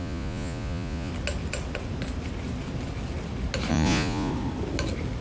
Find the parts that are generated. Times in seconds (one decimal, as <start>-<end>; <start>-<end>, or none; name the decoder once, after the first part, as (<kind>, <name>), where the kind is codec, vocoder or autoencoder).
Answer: 0.0-1.1 (vocoder, Vocos); 3.7-4.3